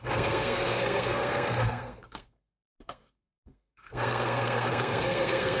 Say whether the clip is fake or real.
fake